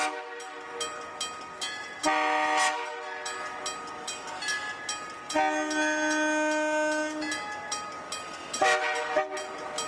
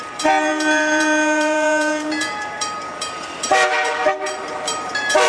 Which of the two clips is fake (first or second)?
second